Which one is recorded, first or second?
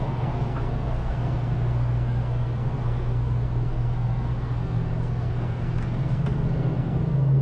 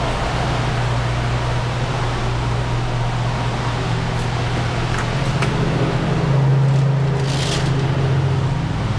second